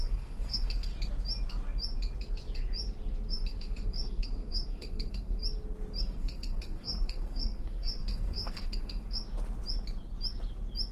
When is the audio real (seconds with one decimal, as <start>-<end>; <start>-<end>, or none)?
0.9-3.3; 5.4-6.0; 9.2-10.9